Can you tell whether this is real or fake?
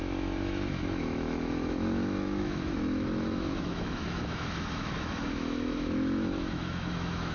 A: fake